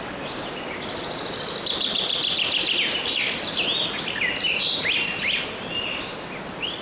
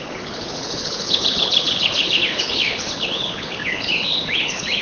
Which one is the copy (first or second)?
second